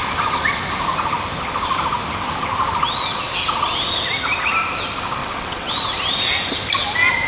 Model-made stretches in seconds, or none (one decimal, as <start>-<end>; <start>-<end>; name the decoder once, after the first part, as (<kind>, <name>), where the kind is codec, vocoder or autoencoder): 5.2-5.7 (vocoder, WaveNeXt)